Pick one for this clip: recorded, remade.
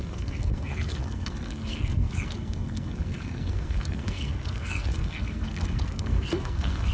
remade